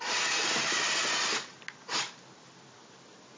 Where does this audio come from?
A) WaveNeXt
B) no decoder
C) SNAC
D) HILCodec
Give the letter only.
B